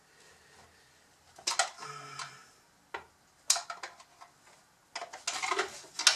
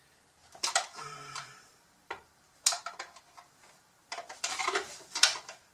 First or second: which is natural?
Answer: first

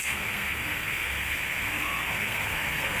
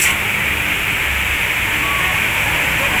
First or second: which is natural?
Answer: second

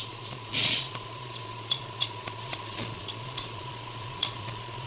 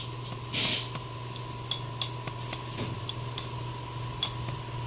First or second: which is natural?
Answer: second